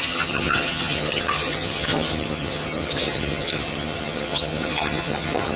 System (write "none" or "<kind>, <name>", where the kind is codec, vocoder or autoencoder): vocoder, HiFi-GAN